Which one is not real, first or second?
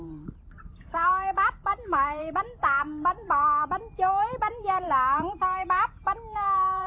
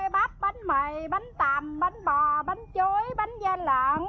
first